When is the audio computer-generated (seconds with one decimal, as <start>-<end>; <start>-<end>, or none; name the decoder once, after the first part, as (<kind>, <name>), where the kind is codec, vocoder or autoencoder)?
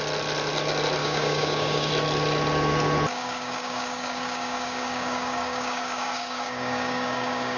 1.0-1.9 (codec, DAC); 3.1-7.6